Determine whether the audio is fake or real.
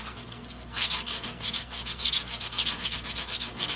fake